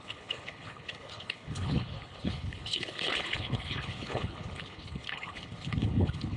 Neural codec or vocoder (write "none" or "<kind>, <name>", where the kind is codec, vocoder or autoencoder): codec, HILCodec